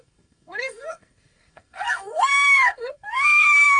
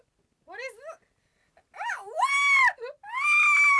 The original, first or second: second